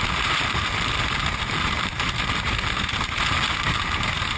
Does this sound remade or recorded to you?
remade